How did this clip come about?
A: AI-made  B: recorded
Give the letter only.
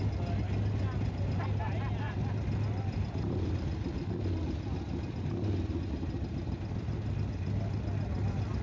B